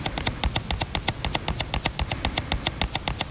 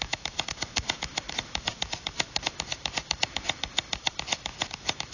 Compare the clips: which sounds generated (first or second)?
second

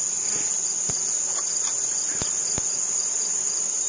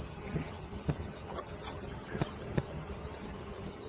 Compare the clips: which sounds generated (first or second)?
second